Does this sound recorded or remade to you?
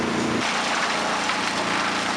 recorded